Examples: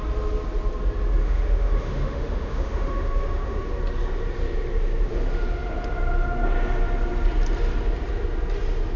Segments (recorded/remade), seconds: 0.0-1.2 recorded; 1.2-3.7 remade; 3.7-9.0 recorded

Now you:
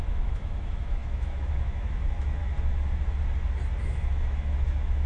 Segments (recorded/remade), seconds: 0.0-2.4 remade; 2.4-3.8 recorded; 3.8-5.1 remade

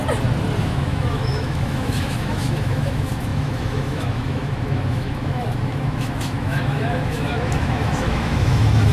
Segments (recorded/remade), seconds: 0.0-0.6 recorded; 0.6-8.9 remade

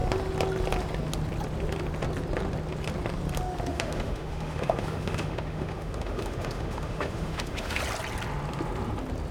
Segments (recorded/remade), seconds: 0.0-3.7 recorded; 3.7-7.8 remade; 7.8-9.3 recorded

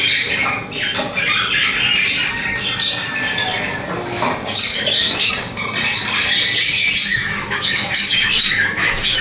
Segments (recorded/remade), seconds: 0.0-4.7 recorded; 4.7-5.3 remade; 5.3-7.1 recorded; 7.1-9.2 remade

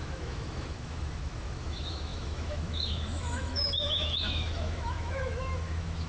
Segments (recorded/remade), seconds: 0.0-6.1 remade

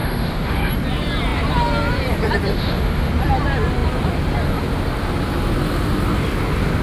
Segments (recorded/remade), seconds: 0.0-0.7 remade; 0.7-2.5 recorded; 2.5-3.1 remade; 3.1-6.8 recorded